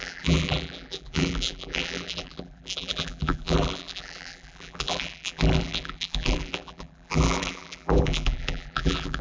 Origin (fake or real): fake